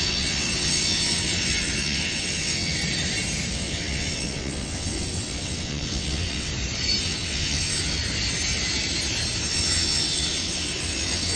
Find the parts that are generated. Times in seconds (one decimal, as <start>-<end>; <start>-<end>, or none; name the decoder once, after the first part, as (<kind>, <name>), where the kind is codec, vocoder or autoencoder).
0.0-2.8 (vocoder, WaveNeXt); 3.5-6.5; 7.0-8.0; 9.5-11.4